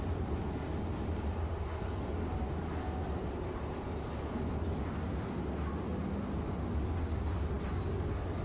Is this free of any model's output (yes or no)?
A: yes